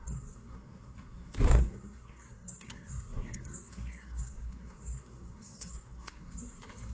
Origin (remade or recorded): remade